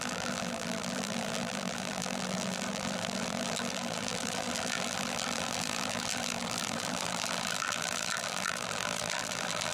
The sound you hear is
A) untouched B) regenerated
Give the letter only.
B